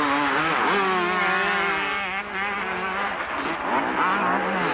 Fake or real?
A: real